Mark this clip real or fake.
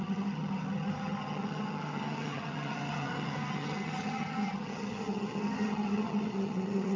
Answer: fake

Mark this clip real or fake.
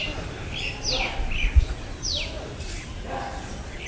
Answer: real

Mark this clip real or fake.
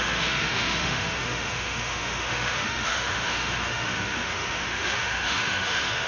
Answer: fake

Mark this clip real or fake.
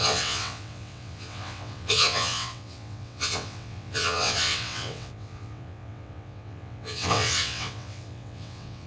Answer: fake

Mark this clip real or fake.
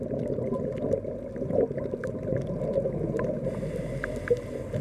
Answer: real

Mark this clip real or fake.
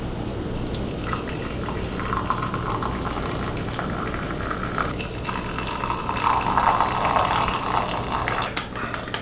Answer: real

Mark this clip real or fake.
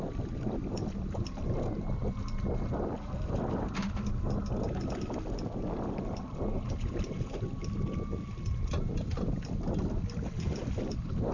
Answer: real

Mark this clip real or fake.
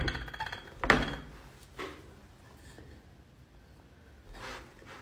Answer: real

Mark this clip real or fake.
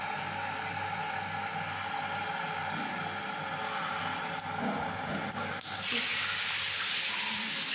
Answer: real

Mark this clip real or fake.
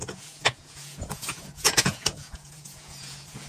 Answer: fake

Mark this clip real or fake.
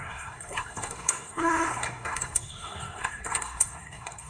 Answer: fake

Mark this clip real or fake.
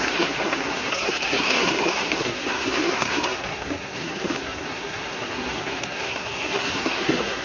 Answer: fake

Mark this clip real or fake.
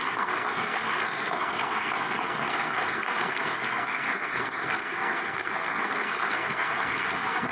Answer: fake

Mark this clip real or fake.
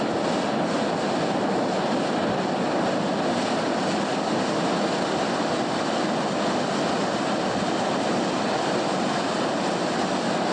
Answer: real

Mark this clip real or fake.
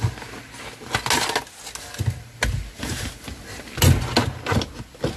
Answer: real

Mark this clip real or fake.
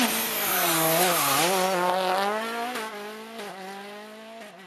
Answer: real